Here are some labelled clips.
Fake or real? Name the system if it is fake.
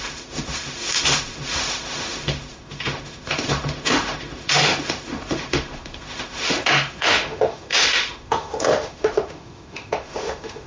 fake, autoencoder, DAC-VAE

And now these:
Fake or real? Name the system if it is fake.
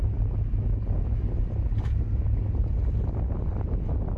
real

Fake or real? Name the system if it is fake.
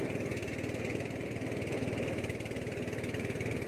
real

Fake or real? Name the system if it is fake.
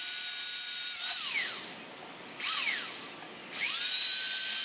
real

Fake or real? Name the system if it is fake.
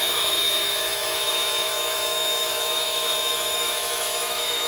fake, autoencoder, DAC-VAE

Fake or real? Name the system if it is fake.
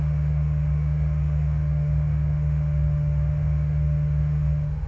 fake, autoencoder, DAC-VAE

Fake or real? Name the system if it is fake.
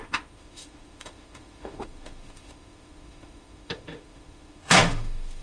fake, autoencoder, DAC-VAE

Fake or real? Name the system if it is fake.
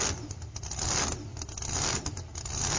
real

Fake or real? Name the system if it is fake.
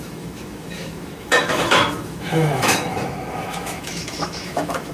fake, autoencoder, DAC-VAE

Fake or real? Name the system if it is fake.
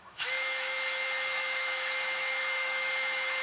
fake, autoencoder, DAC-VAE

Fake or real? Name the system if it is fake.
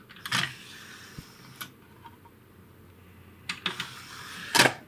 real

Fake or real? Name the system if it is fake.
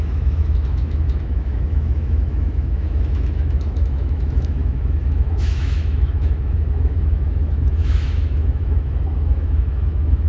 fake, autoencoder, DAC-VAE